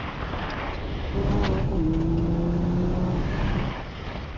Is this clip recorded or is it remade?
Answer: recorded